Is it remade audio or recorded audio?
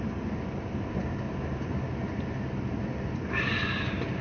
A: recorded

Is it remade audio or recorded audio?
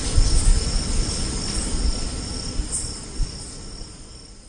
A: recorded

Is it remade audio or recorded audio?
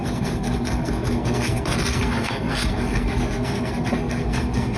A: remade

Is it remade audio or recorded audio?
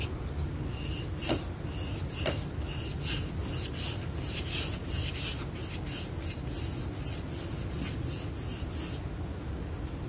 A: recorded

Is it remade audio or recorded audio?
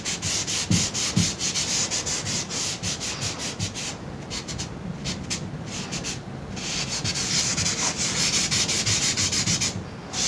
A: recorded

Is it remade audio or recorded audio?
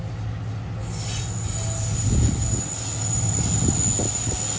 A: recorded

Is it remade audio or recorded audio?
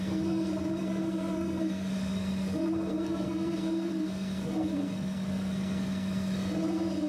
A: remade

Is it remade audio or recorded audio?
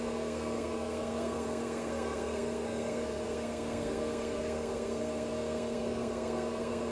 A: remade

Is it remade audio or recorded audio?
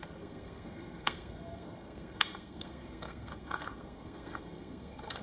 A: remade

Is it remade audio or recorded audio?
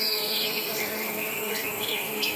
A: remade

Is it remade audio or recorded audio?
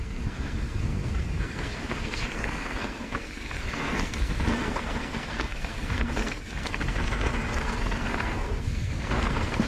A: remade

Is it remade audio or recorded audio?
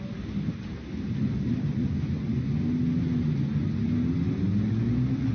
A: recorded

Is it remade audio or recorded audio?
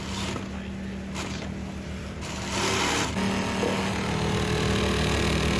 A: recorded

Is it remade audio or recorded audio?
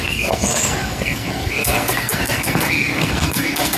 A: remade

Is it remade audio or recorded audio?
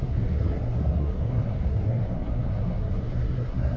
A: remade